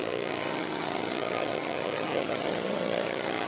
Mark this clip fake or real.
fake